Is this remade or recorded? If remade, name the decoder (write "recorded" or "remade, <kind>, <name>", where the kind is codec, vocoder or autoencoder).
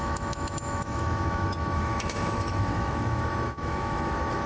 remade, autoencoder, DAC-VAE